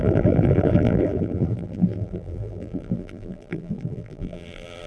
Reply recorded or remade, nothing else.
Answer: remade